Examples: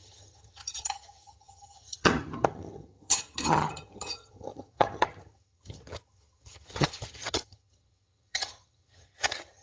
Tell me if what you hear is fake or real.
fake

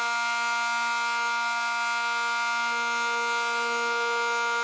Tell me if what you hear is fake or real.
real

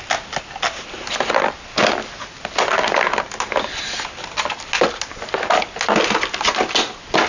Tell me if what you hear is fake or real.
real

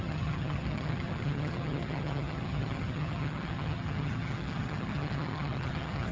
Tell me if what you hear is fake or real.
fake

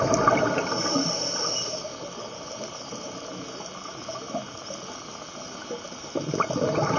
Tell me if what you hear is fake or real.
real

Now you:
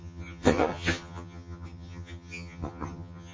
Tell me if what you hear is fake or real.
fake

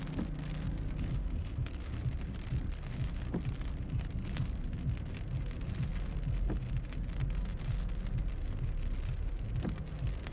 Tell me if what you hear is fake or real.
real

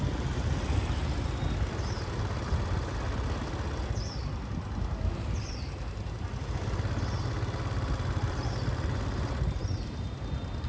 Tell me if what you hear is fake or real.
real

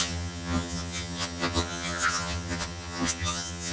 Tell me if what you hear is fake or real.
fake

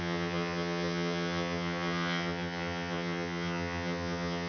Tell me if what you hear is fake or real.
fake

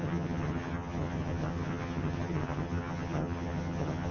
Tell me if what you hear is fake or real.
fake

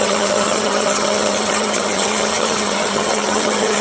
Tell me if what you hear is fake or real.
fake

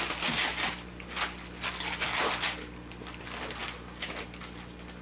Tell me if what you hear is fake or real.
real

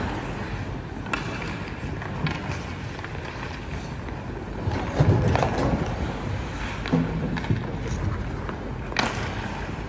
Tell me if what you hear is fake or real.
real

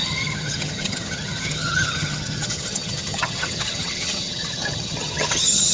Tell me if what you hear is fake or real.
fake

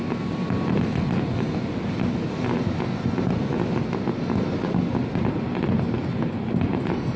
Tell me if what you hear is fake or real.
real